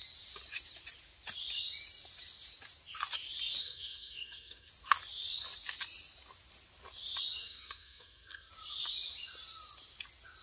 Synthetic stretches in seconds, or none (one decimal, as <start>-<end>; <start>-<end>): 3.6-4.7; 7.4-8.5